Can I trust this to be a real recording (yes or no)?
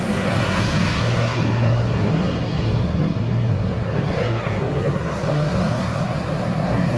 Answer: no